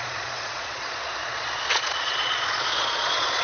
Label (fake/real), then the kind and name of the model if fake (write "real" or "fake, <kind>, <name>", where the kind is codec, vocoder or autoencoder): fake, vocoder, Vocos